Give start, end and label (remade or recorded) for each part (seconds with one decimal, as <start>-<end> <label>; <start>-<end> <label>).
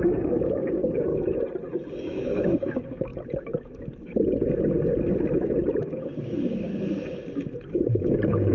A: 0.0-1.1 remade; 1.1-1.9 recorded; 1.9-3.1 remade; 3.1-5.8 recorded; 5.8-6.7 remade; 6.7-7.7 recorded; 7.7-8.5 remade